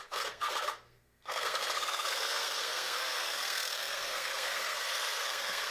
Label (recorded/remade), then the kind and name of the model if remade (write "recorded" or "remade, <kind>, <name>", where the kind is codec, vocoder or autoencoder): remade, codec, SNAC